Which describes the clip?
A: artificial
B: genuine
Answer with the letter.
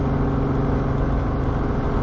B